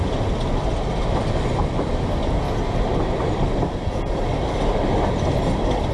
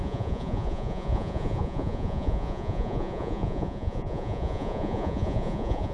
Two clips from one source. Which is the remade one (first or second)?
second